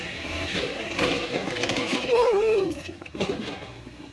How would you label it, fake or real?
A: fake